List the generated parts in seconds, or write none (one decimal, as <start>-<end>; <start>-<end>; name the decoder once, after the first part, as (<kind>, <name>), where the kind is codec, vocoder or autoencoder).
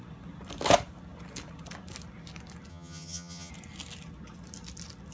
2.7-3.5 (vocoder, HiFi-GAN)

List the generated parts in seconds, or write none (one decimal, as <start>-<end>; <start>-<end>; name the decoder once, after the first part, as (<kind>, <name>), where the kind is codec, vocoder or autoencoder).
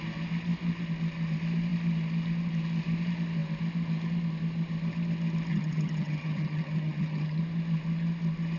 5.5-7.4 (vocoder, HiFi-GAN)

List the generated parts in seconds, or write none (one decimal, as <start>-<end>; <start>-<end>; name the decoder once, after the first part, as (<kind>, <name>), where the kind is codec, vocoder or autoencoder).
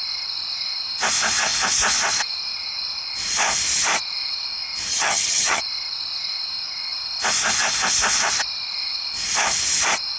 4.9-5.6 (vocoder, HiFi-GAN)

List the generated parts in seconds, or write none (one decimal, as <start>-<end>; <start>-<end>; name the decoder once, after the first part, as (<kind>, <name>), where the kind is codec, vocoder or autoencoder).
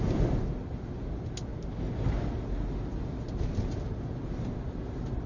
none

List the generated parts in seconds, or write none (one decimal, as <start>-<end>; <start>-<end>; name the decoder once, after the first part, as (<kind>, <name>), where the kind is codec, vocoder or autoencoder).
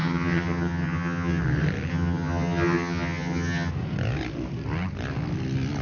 0.0-1.4 (vocoder, HiFi-GAN); 1.9-3.7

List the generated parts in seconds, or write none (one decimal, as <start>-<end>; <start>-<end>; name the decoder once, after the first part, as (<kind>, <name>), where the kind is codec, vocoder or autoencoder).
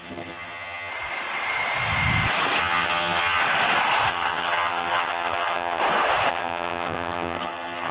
0.0-0.9 (vocoder, HiFi-GAN); 2.6-3.4; 4.1-5.8; 6.3-7.9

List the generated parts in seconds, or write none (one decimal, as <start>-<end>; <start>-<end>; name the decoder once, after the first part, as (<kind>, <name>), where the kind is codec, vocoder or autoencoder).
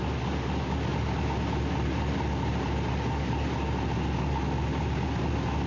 none